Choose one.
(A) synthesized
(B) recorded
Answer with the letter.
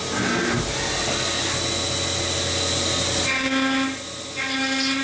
B